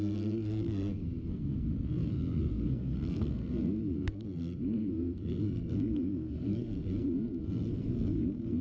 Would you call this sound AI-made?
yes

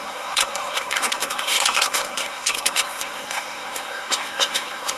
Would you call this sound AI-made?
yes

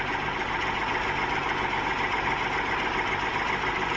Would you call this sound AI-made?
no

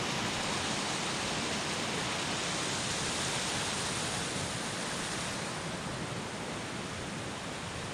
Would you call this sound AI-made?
no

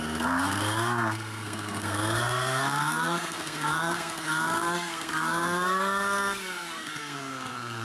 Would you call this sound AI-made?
yes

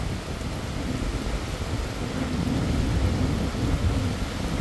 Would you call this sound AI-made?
no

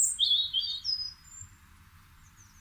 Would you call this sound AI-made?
no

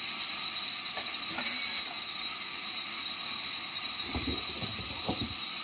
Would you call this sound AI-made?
no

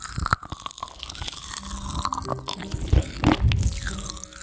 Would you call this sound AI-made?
no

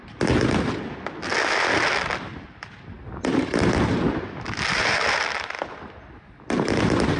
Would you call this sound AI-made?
no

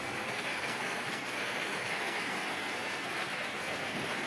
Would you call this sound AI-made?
yes